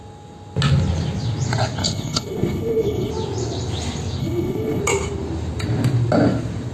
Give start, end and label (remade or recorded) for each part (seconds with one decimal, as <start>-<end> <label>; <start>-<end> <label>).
0.0-1.8 recorded; 1.8-3.1 remade; 3.1-4.2 recorded; 4.2-4.8 remade; 4.8-6.7 recorded